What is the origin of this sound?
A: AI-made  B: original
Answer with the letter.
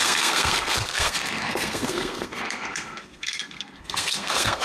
A